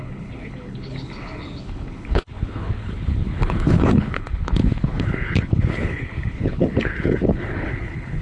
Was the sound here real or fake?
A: fake